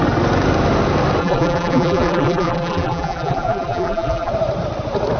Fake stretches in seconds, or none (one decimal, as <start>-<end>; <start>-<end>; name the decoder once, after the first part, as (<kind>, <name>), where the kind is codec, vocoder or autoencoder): 1.2-4.3 (vocoder, BigVGAN v2)